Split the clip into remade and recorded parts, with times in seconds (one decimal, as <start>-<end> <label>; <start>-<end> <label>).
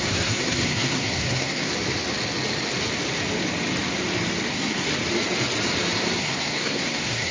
0.0-1.7 remade; 1.7-4.5 recorded; 4.5-4.9 remade; 4.9-6.2 recorded; 6.2-7.3 remade